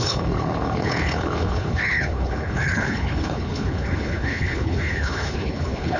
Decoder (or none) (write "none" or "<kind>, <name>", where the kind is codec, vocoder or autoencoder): codec, HILCodec